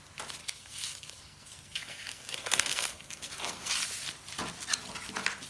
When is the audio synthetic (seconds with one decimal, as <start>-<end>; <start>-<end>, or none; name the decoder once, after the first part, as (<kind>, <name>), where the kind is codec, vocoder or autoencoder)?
0.4-3.7 (codec, SNAC)